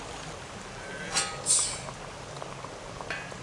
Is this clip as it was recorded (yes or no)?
yes